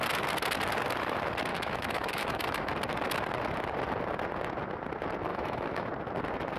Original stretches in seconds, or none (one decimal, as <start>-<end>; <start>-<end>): 0.0-1.5; 2.7-5.3; 5.9-6.6